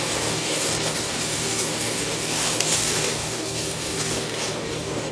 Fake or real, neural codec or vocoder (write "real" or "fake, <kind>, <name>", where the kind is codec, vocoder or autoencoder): fake, codec, DAC